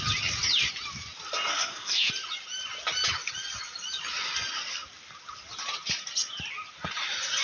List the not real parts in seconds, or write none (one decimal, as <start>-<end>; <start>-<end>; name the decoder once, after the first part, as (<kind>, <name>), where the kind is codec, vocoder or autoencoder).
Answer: 1.5-2.1 (codec, SNAC)